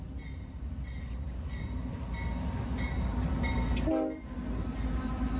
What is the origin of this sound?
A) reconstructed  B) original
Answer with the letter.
B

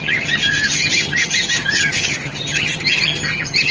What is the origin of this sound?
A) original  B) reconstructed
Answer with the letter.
B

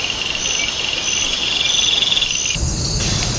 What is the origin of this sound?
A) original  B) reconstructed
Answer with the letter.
A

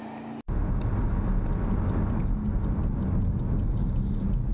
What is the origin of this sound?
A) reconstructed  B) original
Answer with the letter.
B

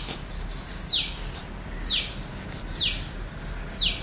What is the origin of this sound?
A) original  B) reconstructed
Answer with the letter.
A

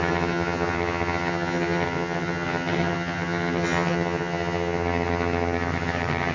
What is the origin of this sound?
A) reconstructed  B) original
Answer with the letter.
A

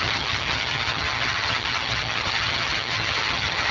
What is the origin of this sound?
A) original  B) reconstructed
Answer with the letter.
B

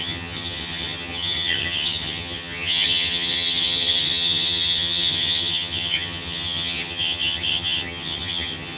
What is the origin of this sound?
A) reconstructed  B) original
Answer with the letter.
A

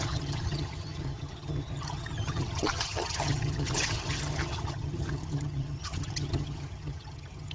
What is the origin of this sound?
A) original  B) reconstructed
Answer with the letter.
B